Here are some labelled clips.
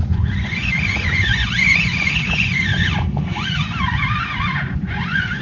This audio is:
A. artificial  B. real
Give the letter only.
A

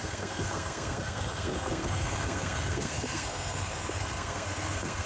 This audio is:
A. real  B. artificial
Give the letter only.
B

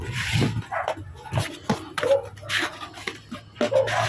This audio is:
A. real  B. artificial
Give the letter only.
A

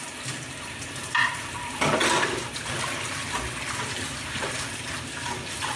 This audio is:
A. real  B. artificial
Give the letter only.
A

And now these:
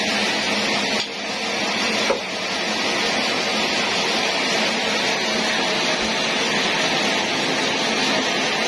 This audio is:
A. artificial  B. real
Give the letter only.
B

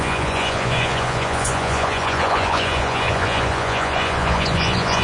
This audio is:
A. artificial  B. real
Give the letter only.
A